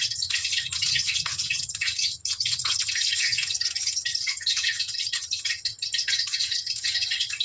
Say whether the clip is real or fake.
fake